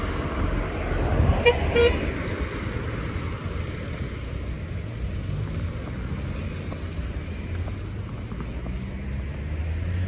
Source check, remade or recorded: recorded